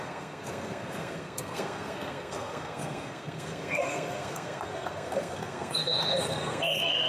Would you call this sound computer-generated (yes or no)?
yes